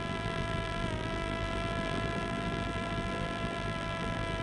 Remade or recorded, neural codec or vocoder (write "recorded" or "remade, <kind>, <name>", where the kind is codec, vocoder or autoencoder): remade, vocoder, BigVGAN v2